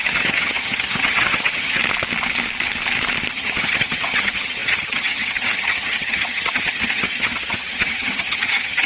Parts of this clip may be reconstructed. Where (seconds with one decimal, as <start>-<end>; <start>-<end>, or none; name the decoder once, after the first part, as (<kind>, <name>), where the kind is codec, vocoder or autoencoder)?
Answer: 0.0-1.8 (vocoder, HiFi-GAN); 3.3-8.9